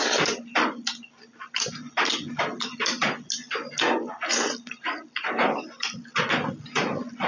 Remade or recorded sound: recorded